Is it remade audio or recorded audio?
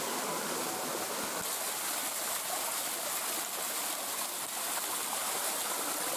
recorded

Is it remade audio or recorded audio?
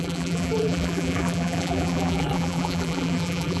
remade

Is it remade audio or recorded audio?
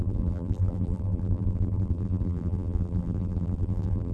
remade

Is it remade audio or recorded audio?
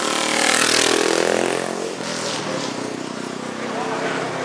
recorded